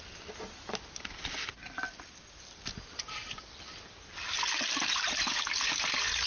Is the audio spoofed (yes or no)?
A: no